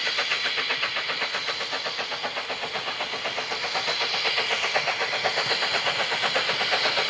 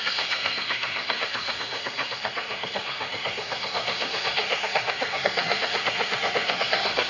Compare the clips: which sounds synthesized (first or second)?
second